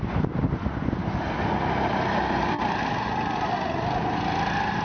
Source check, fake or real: real